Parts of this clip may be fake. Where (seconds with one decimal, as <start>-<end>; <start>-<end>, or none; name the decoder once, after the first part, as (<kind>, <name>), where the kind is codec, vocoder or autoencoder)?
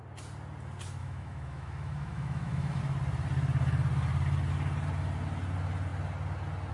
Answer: 1.0-2.8 (autoencoder, DAC-VAE)